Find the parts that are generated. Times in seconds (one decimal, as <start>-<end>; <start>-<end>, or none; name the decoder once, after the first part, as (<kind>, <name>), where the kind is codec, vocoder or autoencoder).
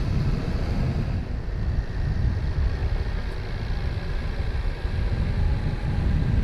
2.8-5.6 (vocoder, BigVGAN v2)